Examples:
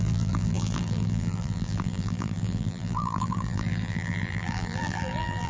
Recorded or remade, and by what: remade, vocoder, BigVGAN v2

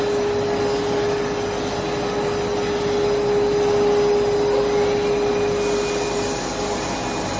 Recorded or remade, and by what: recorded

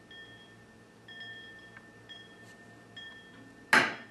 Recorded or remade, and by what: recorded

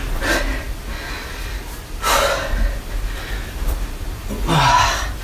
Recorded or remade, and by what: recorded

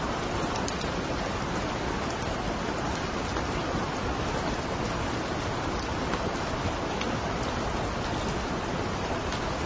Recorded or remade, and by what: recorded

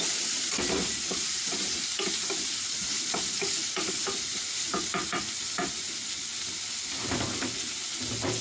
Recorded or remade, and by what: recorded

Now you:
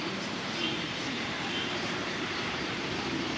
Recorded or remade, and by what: remade, vocoder, BigVGAN v2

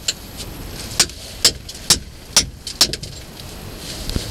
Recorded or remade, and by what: recorded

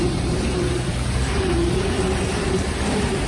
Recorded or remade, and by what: remade, vocoder, BigVGAN v2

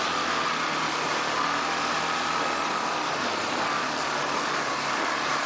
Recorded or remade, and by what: recorded